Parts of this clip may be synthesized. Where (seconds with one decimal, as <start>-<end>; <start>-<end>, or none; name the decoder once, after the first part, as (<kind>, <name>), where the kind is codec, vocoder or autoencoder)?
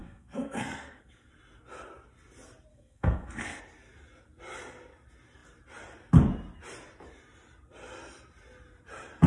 0.0-1.3 (codec, SNAC); 2.7-3.6